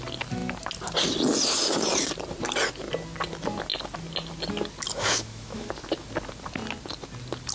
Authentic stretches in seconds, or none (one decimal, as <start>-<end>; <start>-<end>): 0.0-4.9; 5.7-7.5